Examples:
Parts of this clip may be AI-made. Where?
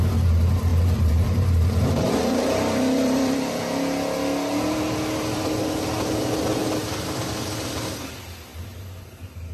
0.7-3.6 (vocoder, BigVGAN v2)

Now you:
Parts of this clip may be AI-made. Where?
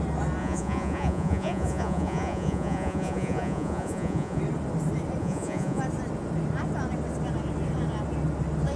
0.4-4.4 (vocoder, Vocos); 5.2-5.8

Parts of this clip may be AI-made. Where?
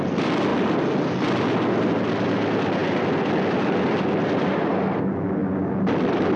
none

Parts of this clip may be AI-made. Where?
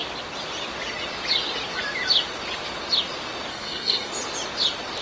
3.5-4.1 (codec, SNAC)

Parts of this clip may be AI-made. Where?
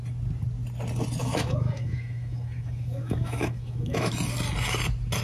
1.2-4.1 (autoencoder, DAC-VAE)